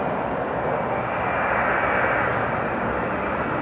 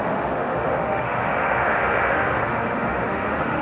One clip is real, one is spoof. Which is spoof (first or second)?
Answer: second